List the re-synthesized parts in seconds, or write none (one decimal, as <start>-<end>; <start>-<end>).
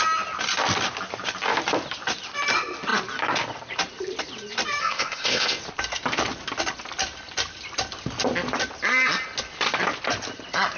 4.8-5.6